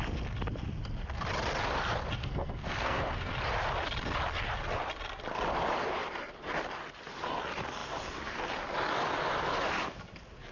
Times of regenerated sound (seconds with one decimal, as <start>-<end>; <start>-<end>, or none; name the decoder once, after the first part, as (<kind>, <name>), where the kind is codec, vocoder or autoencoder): 2.2-3.3 (codec, SNAC)